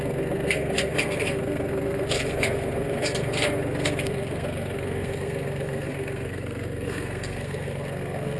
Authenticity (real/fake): fake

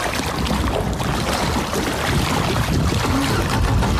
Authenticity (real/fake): real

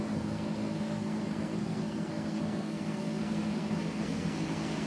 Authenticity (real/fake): fake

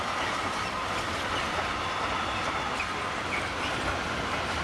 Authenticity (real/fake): real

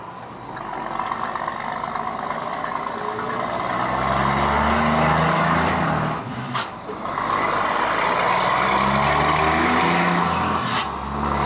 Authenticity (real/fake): real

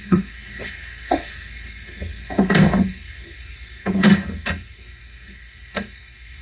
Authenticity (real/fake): fake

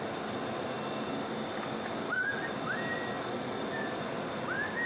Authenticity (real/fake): real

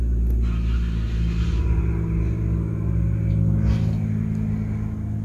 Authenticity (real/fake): real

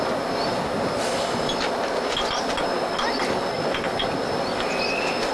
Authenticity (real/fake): real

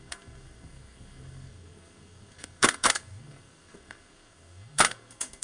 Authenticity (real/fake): fake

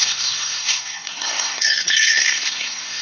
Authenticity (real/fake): fake